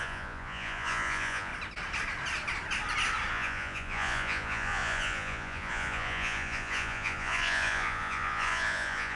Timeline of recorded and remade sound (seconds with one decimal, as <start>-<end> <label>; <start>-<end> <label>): 0.0-1.5 remade; 1.5-3.3 recorded; 3.3-9.2 remade